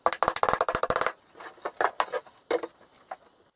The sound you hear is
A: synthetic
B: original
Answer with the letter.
B